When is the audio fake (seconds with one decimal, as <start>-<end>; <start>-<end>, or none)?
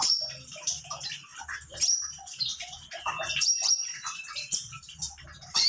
0.0-5.7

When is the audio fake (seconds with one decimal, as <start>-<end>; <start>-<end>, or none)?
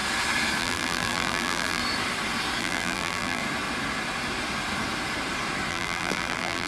0.6-1.8; 2.6-3.4; 5.7-6.7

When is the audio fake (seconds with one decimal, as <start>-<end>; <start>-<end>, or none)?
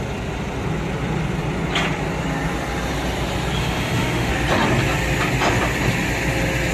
3.6-4.3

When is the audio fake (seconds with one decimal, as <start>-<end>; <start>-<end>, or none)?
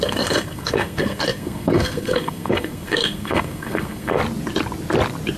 0.0-4.2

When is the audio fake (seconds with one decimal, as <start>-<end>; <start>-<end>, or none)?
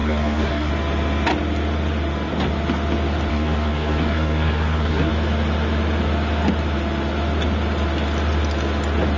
0.0-0.7; 3.3-5.1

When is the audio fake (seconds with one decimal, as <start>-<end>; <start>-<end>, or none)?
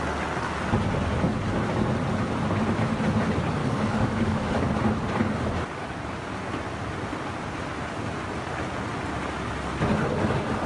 3.6-4.8